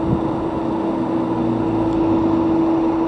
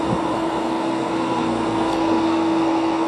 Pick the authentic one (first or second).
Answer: first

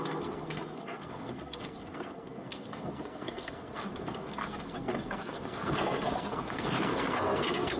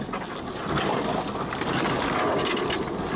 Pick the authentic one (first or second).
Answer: second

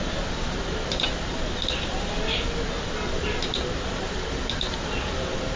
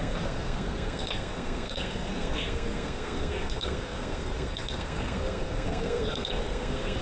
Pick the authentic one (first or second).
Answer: first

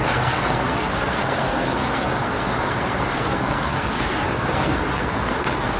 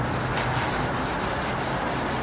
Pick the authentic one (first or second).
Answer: second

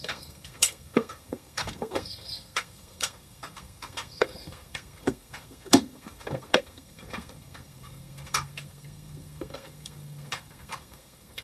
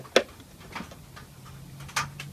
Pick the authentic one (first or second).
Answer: second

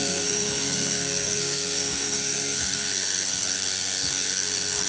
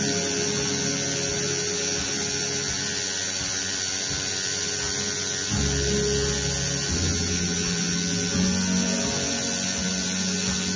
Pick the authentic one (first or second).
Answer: second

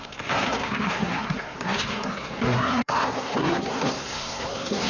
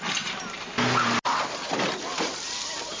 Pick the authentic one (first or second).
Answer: second